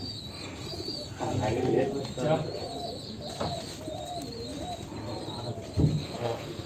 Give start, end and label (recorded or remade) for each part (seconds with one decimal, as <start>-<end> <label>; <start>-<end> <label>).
0.0-6.0 recorded; 6.0-6.7 remade